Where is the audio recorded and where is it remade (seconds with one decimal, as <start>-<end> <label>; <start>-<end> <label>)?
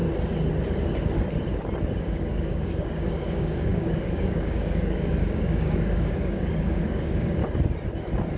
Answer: 0.0-2.0 recorded; 2.0-7.4 remade; 7.4-8.4 recorded